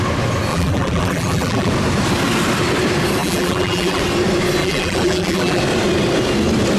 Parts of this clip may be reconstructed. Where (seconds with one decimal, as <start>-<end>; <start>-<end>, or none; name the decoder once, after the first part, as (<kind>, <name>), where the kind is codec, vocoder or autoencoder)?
0.5-1.7 (vocoder, BigVGAN v2); 3.2-4.0; 4.6-5.6

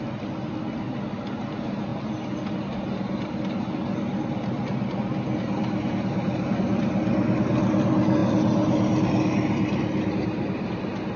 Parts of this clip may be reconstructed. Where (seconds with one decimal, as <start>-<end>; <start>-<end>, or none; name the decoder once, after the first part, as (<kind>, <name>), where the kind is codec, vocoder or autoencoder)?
none